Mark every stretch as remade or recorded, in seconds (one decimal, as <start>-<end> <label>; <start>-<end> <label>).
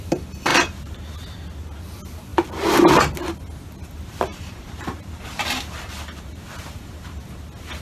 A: 0.0-0.5 recorded; 0.5-1.0 remade; 1.0-4.3 recorded; 4.3-7.2 remade; 7.2-7.8 recorded